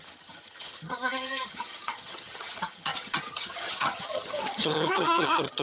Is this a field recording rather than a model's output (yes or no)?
no